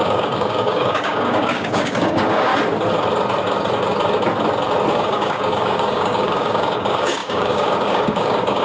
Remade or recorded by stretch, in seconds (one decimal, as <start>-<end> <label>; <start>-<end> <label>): 0.0-2.5 remade; 2.5-4.9 recorded; 4.9-8.6 remade